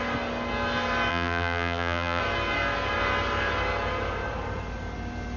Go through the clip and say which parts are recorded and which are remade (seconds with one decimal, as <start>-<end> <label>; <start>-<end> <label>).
0.0-1.1 recorded; 1.1-2.2 remade; 2.2-5.4 recorded